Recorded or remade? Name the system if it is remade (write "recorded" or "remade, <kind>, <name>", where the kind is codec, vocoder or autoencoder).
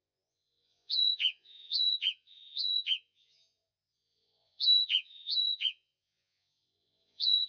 remade, vocoder, Vocos